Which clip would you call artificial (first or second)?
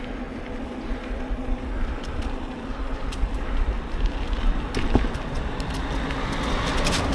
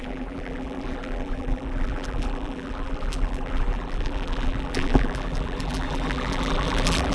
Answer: second